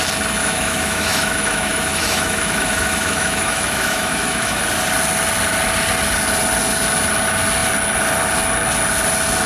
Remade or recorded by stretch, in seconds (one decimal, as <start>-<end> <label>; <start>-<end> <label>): 0.0-0.4 recorded; 0.4-4.6 remade; 4.6-9.5 recorded